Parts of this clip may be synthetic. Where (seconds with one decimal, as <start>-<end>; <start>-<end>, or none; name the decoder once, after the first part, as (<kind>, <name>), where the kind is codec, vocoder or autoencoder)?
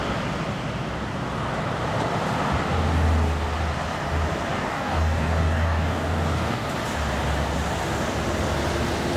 4.5-6.7 (codec, DAC)